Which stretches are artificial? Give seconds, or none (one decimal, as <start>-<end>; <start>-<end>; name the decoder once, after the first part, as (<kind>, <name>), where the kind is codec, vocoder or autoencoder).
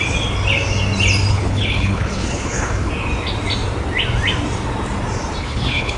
1.3-2.9 (codec, HILCodec); 5.4-6.0